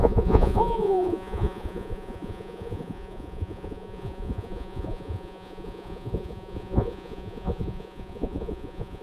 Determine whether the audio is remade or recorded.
remade